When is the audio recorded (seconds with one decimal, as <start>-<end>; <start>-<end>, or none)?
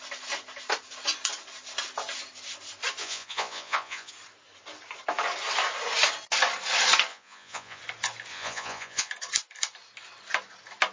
0.0-3.0; 4.1-7.1; 7.8-8.3; 9.1-10.9